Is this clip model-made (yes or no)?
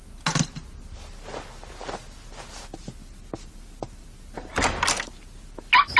no